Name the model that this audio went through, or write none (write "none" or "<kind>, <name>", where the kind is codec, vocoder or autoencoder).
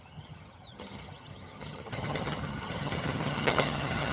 vocoder, HiFi-GAN